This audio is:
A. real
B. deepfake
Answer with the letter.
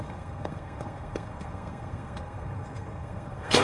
B